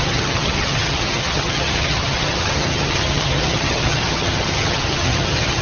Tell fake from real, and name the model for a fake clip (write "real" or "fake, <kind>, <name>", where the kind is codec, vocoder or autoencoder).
fake, vocoder, HiFi-GAN